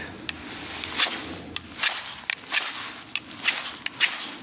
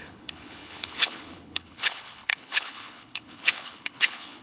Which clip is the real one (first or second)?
first